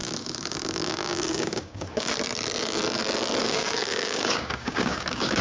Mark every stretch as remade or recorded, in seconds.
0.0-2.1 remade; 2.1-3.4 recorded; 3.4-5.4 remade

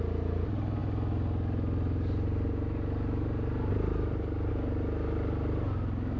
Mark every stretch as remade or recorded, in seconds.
0.0-6.2 recorded